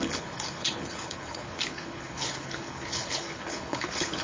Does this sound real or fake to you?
fake